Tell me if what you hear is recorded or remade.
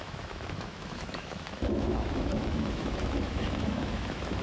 remade